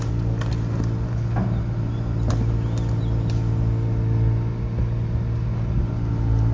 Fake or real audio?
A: real